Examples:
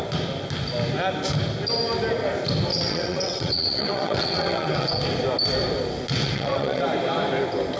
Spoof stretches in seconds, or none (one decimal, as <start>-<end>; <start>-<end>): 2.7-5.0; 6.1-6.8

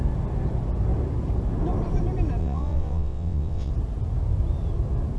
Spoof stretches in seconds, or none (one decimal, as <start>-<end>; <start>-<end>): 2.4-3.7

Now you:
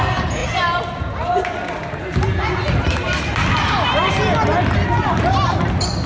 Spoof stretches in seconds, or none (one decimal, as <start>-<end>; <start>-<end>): none

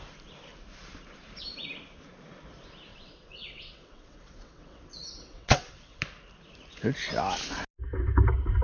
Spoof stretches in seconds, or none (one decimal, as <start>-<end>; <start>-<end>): 2.9-6.0